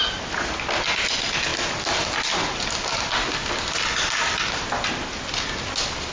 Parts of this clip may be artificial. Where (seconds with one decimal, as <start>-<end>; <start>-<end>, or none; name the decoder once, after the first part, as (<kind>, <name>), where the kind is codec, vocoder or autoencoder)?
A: none